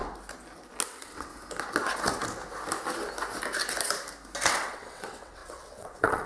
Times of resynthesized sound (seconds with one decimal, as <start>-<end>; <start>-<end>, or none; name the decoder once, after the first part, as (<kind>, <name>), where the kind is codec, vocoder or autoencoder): 0.9-1.3 (vocoder, WaveNeXt); 4.5-6.3